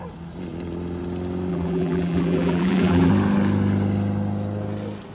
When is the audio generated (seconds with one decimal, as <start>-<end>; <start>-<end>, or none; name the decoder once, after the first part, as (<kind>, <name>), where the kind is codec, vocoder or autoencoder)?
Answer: 1.5-3.1 (vocoder, BigVGAN v2)